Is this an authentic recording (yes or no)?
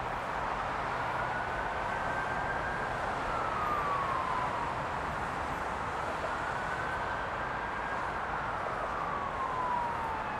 yes